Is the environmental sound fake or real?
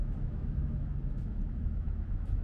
fake